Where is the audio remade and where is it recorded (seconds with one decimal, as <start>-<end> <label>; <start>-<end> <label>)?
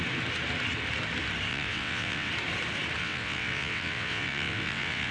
0.0-1.5 recorded; 1.5-2.3 remade; 2.3-3.0 recorded; 3.0-5.1 remade